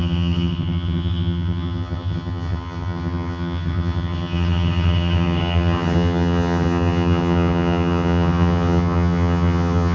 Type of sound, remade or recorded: remade